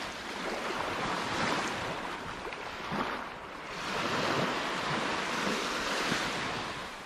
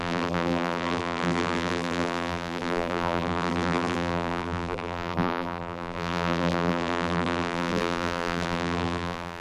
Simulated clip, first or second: second